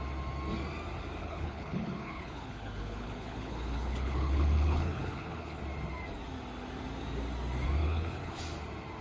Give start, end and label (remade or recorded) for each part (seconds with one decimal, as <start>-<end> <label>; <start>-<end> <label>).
0.0-1.2 recorded; 1.2-5.6 remade; 5.6-7.8 recorded; 7.8-8.4 remade; 8.4-9.0 recorded